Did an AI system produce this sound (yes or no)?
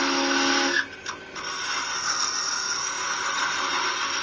no